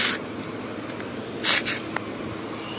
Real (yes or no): yes